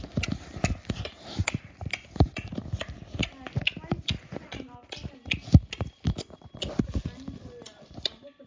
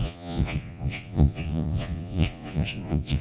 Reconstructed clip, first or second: second